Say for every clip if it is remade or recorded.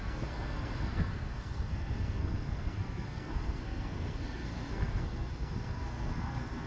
remade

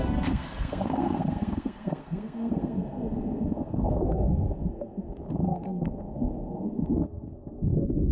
remade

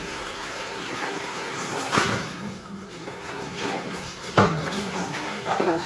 remade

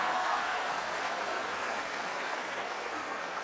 remade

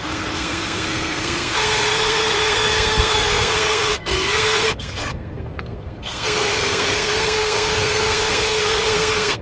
remade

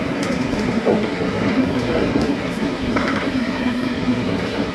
remade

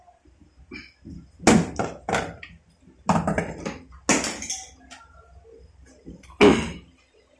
recorded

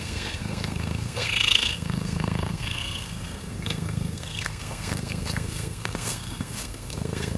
remade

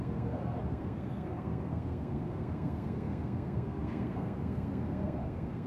remade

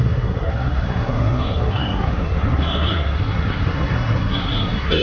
remade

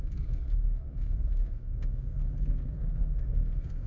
remade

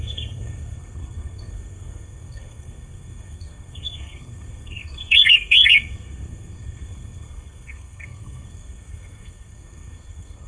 remade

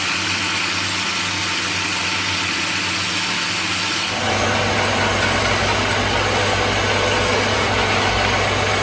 recorded